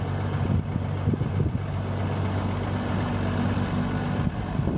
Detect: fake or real real